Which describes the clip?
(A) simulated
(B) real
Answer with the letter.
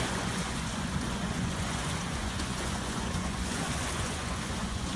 A